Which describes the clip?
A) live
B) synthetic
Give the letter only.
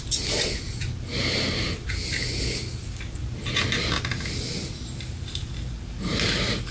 A